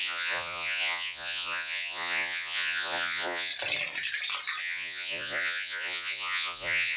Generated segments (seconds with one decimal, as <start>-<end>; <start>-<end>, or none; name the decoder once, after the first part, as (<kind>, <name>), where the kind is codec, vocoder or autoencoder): 0.0-3.5 (vocoder, Vocos); 4.6-7.0